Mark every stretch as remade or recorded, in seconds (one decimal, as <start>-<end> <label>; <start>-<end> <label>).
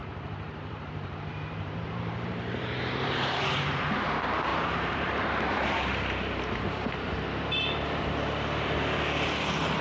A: 0.0-3.8 remade; 3.8-4.5 recorded; 4.5-8.8 remade; 8.8-9.8 recorded